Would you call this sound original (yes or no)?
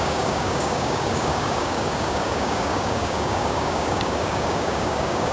no